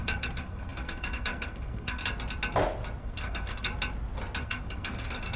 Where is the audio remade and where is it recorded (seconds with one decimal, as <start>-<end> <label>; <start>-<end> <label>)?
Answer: 0.0-2.0 remade; 2.0-3.0 recorded; 3.0-3.7 remade; 3.7-4.4 recorded; 4.4-5.4 remade